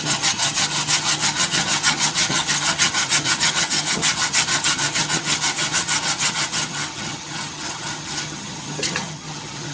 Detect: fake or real fake